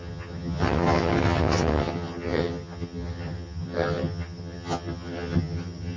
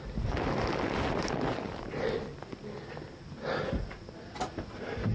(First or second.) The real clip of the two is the second